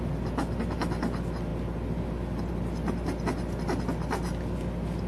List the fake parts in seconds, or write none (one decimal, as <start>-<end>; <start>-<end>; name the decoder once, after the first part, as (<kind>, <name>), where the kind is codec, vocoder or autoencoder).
none

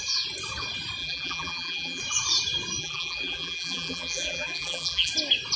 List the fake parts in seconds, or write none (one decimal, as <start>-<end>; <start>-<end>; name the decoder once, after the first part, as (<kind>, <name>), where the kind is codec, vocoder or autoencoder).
1.0-2.0 (vocoder, BigVGAN v2); 2.8-5.1

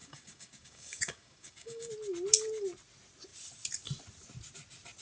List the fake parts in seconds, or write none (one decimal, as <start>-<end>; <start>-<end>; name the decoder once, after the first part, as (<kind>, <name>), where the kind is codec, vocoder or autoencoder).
0.0-1.9 (codec, DAC)